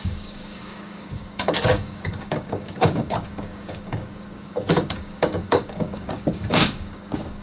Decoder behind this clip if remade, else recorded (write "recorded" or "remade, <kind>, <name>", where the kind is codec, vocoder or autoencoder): remade, codec, DAC